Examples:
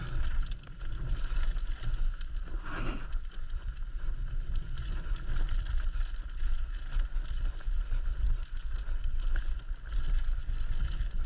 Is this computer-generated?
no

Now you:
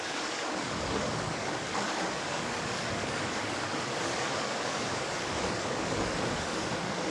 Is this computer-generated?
yes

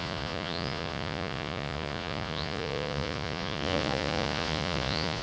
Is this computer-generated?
yes